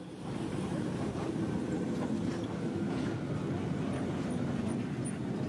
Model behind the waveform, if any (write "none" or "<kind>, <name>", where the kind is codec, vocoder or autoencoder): none